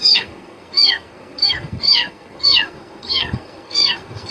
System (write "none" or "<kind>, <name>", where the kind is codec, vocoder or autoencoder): codec, SNAC